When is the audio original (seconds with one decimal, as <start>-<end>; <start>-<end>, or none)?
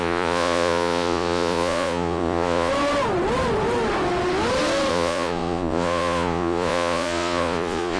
2.7-4.9